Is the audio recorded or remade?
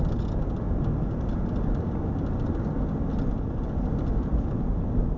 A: recorded